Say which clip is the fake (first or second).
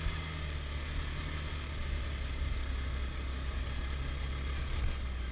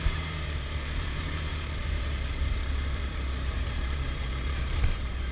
second